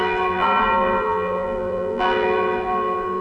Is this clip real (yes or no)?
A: no